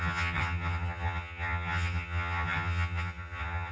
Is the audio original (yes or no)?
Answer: no